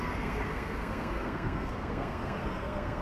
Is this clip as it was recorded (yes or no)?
no